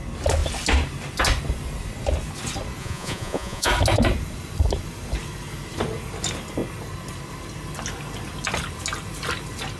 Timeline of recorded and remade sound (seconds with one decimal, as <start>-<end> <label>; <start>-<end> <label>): 0.0-2.8 recorded; 2.8-3.7 remade; 3.7-9.8 recorded

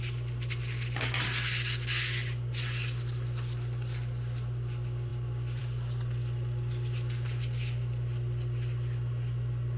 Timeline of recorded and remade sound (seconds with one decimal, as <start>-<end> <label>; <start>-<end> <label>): 0.0-9.8 recorded

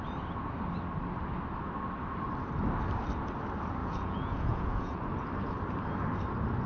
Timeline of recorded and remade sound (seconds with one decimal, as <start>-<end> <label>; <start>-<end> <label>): 0.0-3.8 recorded; 3.8-5.0 remade; 5.0-6.7 recorded

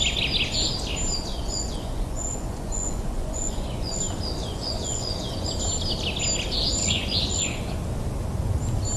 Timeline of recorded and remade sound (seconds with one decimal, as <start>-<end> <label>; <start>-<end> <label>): 0.0-1.3 recorded; 1.3-4.0 remade; 4.0-4.4 recorded; 4.4-5.5 remade; 5.5-6.8 recorded; 6.8-7.8 remade; 7.8-9.0 recorded

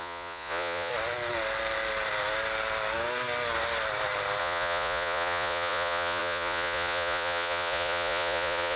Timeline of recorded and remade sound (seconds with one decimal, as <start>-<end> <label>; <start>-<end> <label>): 0.0-0.9 remade; 0.9-4.4 recorded; 4.4-8.8 remade

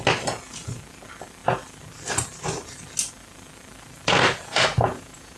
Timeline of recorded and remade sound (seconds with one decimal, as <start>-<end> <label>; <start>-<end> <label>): 0.0-4.5 recorded; 4.5-5.4 remade

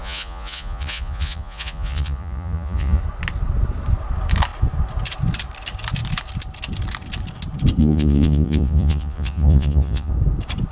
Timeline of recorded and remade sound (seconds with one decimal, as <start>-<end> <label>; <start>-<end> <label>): 0.0-3.0 remade; 3.0-7.8 recorded; 7.8-10.1 remade; 10.1-10.7 recorded

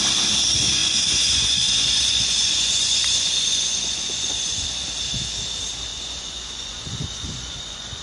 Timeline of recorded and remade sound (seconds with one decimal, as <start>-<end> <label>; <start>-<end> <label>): 0.0-0.8 recorded; 0.8-4.8 remade; 4.8-5.9 recorded; 5.9-8.0 remade